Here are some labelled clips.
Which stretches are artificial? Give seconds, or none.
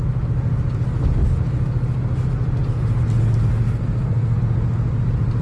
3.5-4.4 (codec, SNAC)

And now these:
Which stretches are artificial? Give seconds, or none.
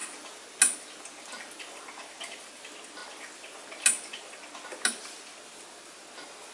none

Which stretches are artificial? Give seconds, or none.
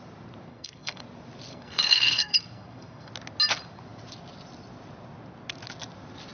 0.5-1.0 (codec, SNAC); 1.5-3.1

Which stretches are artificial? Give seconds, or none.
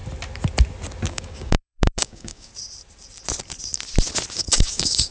1.1-2.5 (codec, DAC); 4.4-5.1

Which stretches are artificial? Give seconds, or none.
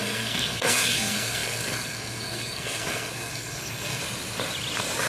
0.0-4.0 (codec, SNAC)